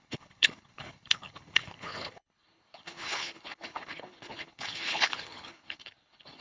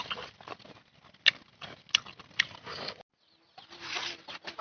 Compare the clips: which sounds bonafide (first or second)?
second